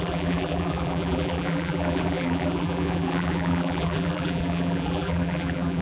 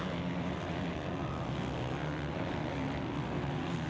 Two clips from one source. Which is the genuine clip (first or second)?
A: second